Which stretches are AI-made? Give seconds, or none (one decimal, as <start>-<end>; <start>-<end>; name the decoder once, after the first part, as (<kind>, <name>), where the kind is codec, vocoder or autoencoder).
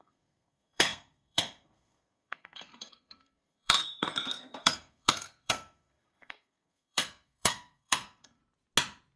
0.0-8.4 (codec, SNAC)